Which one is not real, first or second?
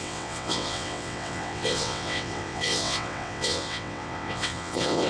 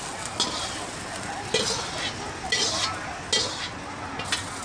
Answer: first